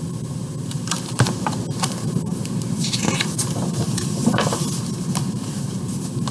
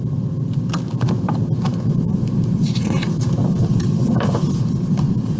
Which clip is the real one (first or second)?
second